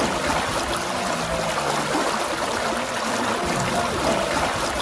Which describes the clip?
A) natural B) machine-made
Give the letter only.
A